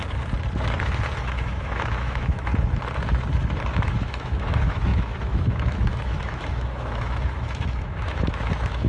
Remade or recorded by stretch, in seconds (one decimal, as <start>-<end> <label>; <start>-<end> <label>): 0.0-1.2 recorded; 1.2-2.5 remade; 2.5-3.7 recorded; 3.7-8.9 remade